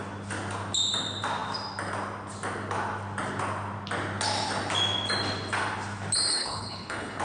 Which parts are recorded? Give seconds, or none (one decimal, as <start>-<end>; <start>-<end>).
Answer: 0.0-6.3